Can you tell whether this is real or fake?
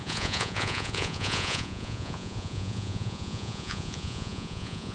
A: fake